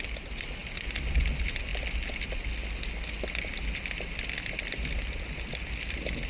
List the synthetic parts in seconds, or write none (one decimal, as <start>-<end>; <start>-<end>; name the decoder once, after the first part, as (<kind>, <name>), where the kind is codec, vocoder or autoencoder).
none